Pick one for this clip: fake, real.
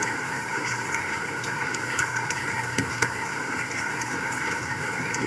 fake